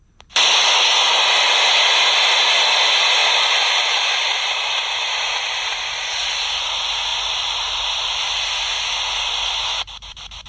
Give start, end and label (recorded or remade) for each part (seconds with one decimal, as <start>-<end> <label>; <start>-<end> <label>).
0.0-3.2 recorded; 3.2-5.1 remade; 5.1-7.1 recorded; 7.1-8.5 remade; 8.5-10.5 recorded